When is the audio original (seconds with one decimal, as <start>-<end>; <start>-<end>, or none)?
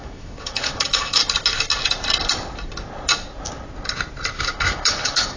1.2-4.4